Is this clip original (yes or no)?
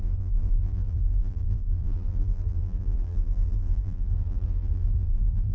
no